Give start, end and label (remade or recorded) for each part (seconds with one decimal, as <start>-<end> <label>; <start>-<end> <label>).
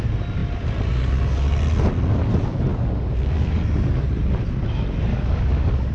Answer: 0.0-2.7 recorded; 2.7-3.6 remade; 3.6-5.1 recorded; 5.1-5.9 remade